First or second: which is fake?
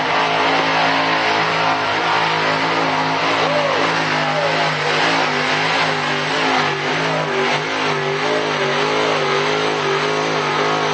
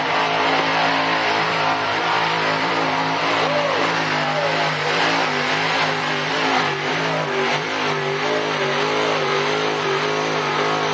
second